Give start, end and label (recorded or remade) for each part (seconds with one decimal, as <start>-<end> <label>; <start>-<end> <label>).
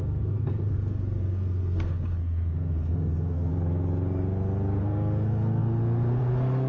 0.0-3.5 remade; 3.5-4.8 recorded; 4.8-6.7 remade